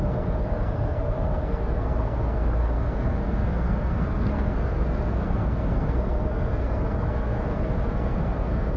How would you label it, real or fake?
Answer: fake